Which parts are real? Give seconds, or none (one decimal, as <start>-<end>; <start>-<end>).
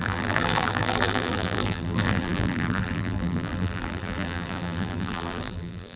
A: none